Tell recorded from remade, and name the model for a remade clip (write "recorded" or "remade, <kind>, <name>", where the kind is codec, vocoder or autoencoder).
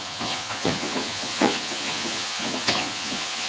remade, vocoder, Vocos